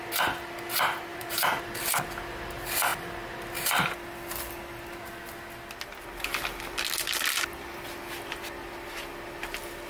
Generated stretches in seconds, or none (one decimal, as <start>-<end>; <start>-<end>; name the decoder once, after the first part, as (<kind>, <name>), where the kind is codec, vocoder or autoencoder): 1.1-1.7 (vocoder, BigVGAN v2)